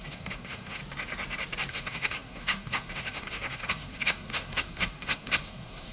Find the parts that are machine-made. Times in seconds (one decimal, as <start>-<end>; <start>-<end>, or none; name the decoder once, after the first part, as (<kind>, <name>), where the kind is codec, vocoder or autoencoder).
0.0-0.8 (codec, SNAC); 1.7-5.9